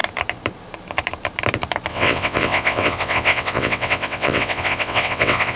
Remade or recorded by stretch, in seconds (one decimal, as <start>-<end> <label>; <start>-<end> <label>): 0.0-1.9 recorded; 1.9-5.6 remade